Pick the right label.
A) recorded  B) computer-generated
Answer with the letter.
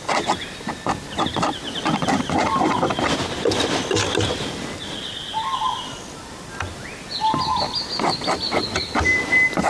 A